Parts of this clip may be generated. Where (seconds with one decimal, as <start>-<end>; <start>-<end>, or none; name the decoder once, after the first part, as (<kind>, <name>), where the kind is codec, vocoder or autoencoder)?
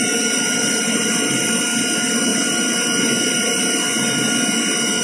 none